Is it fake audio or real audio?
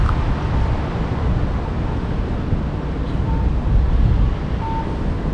real